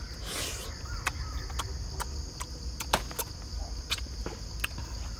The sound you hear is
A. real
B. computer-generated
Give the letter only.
A